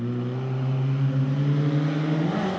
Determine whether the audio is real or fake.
real